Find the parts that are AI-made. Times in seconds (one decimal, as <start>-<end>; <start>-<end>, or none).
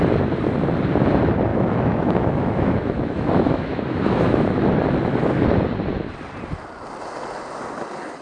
1.5-4.7